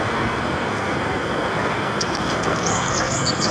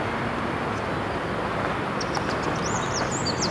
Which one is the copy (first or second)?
first